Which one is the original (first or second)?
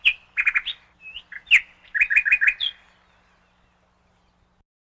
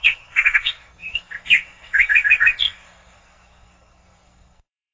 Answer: first